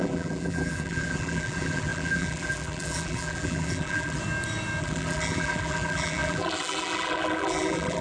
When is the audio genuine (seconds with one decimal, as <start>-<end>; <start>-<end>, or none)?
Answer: 4.2-4.8